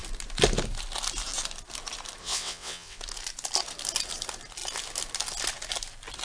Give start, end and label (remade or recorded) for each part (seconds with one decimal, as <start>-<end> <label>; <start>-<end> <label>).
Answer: 0.0-2.2 recorded; 2.2-3.0 remade; 3.0-6.2 recorded